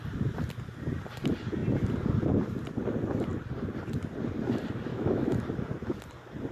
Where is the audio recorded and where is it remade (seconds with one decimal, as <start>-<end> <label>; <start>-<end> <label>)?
0.0-4.9 recorded; 4.9-5.4 remade; 5.4-6.5 recorded